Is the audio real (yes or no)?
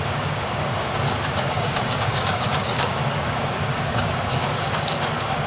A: no